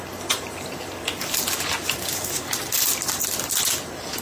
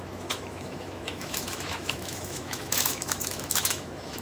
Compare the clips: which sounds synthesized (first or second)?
second